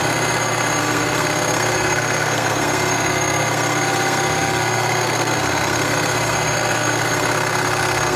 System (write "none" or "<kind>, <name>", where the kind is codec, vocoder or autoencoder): codec, SNAC